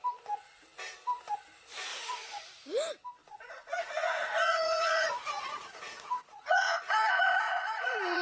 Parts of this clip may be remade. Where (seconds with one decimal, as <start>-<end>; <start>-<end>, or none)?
1.9-2.4; 3.2-8.2